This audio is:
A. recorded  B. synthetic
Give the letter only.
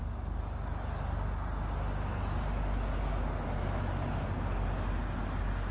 A